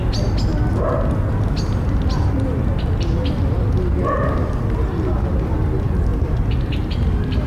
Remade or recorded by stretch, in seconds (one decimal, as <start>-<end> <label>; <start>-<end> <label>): 0.0-7.5 recorded